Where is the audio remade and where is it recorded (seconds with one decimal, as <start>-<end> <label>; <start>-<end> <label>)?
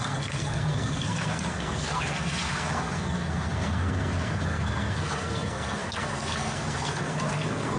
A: 0.0-7.8 remade